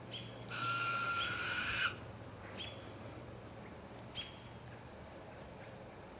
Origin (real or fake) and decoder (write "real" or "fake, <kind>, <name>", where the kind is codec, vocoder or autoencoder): real